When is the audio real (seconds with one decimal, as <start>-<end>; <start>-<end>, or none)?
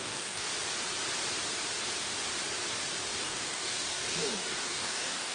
0.5-3.2